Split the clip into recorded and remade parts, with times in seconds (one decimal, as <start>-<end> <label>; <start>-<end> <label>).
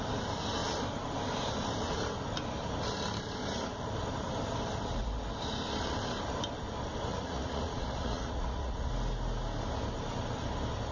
0.0-7.1 recorded; 7.1-8.9 remade; 8.9-10.9 recorded